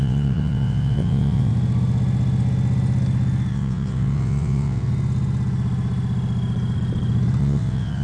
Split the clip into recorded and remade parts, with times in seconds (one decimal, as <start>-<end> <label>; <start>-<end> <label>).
0.0-1.5 remade; 1.5-3.5 recorded; 3.5-4.9 remade; 4.9-7.4 recorded; 7.4-8.0 remade